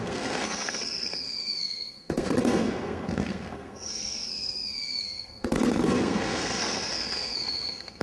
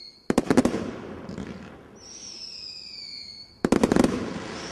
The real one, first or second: second